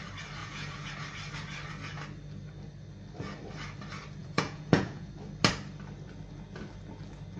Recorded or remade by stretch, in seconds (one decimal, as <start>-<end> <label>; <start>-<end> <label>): 0.0-0.4 recorded; 0.4-0.9 remade; 0.9-4.2 recorded; 4.2-5.1 remade; 5.1-7.4 recorded